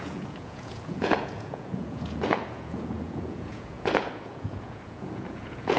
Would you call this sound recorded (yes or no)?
no